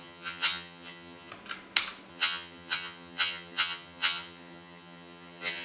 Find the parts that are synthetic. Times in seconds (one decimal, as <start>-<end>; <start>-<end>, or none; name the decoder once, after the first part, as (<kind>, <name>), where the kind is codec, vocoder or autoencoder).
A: 0.0-1.3 (vocoder, HiFi-GAN); 2.1-5.6